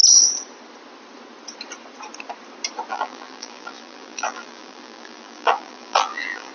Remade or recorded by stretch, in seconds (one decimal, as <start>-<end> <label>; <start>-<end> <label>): 0.0-2.9 recorded; 2.9-6.5 remade